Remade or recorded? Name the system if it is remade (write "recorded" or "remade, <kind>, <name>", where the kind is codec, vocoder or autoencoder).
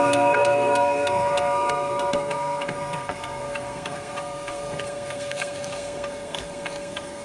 remade, codec, SNAC